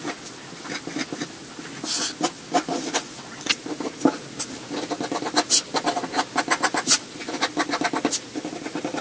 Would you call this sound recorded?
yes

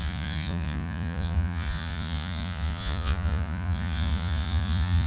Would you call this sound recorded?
no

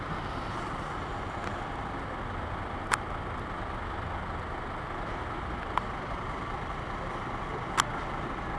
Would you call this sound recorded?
yes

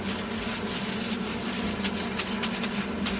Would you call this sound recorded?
yes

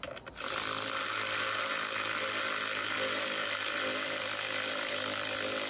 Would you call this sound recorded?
yes